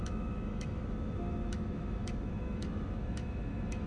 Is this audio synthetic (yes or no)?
yes